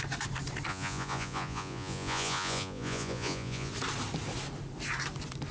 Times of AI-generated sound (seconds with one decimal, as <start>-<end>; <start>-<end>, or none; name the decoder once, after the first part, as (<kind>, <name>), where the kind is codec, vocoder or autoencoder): 0.7-3.7 (vocoder, Vocos)